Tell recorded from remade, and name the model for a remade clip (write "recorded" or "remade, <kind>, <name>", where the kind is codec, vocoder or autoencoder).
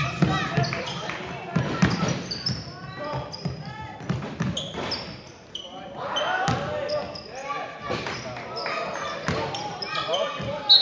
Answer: recorded